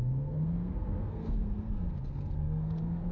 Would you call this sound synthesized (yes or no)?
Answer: yes